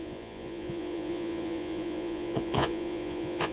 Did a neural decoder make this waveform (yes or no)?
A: yes